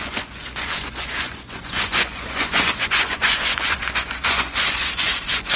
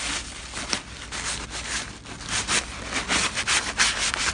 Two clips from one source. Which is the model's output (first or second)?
first